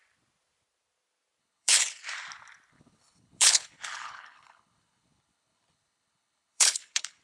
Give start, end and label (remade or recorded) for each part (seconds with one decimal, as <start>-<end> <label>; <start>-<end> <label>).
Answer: 0.0-1.4 recorded; 1.4-2.0 remade; 2.0-2.7 recorded; 2.7-7.2 remade